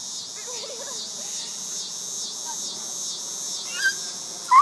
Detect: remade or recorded recorded